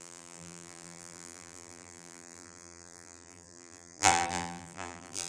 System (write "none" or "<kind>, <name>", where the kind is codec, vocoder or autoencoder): vocoder, BigVGAN v2